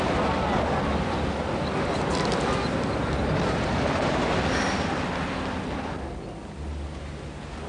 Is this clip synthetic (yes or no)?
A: no